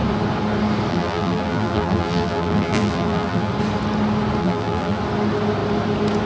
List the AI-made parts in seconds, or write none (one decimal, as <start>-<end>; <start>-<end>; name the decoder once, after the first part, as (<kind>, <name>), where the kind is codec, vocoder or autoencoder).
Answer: 0.9-3.5 (vocoder, BigVGAN v2); 4.4-5.0